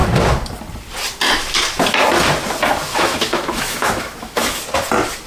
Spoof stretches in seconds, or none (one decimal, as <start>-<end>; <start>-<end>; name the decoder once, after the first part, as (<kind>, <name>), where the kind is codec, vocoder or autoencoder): 2.9-4.6 (autoencoder, DAC-VAE)